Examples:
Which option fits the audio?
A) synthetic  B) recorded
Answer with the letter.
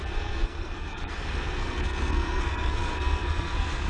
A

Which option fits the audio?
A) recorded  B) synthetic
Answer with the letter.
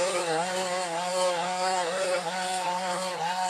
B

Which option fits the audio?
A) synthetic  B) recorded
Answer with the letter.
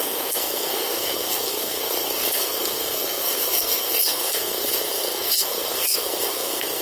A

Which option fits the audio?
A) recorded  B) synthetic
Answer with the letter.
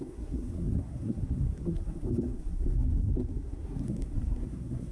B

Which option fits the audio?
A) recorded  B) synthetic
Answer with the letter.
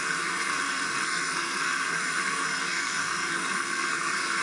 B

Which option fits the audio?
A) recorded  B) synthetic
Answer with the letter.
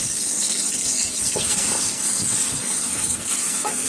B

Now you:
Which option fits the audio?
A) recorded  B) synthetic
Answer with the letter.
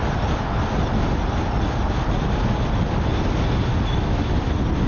A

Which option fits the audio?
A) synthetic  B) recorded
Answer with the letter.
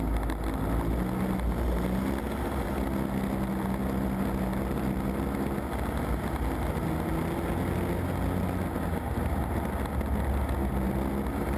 B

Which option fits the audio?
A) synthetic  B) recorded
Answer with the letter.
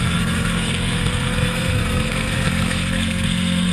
A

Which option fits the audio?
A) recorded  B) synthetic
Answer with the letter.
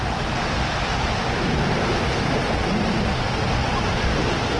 A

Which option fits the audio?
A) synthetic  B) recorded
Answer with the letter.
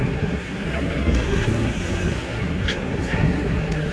A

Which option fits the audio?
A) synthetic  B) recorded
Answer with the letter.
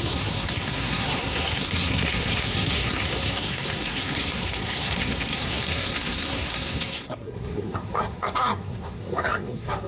A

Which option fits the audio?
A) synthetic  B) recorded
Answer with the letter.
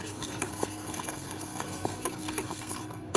A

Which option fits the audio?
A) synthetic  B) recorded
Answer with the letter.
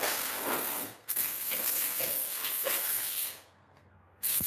A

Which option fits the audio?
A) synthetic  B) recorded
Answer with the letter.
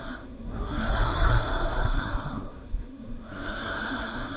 A